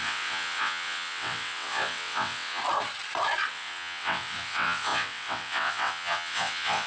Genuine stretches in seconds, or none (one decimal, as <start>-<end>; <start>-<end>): 2.6-3.5